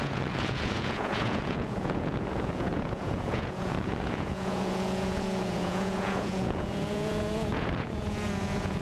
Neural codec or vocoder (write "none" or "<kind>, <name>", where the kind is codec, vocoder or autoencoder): vocoder, Vocos